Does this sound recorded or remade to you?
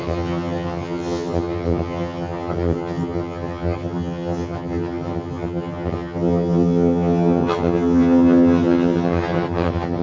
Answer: remade